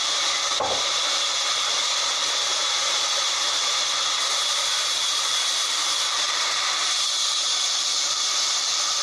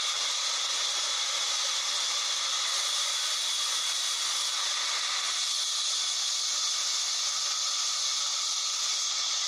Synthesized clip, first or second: first